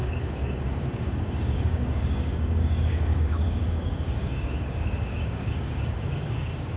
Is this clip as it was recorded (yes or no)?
no